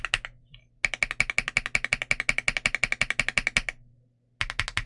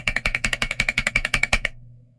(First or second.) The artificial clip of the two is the second